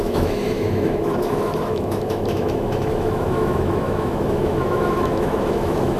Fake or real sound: fake